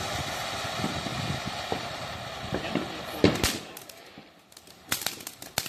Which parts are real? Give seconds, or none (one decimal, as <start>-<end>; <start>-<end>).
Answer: none